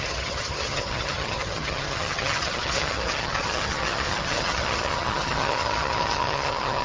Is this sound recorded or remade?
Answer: remade